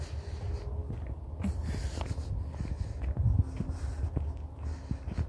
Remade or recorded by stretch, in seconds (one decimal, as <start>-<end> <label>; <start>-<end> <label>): 0.0-5.3 recorded